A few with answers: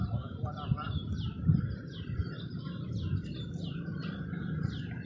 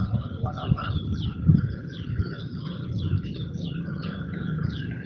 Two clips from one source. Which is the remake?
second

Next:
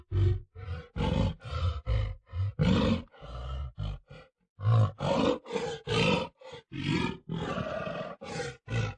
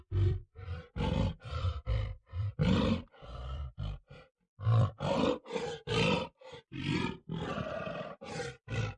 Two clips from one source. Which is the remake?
second